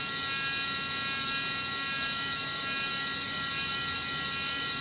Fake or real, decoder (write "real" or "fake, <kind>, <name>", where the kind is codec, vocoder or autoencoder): real